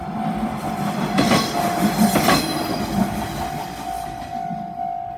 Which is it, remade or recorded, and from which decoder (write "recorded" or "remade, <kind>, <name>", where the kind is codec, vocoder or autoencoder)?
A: recorded